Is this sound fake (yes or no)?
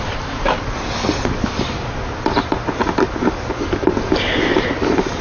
no